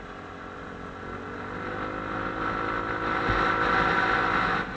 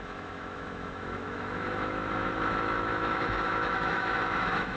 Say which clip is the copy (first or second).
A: second